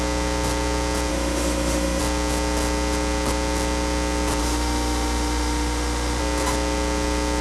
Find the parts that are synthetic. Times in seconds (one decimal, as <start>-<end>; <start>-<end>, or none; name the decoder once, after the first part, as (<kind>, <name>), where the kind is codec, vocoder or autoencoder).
1.1-2.0 (autoencoder, DAC-VAE); 4.4-6.2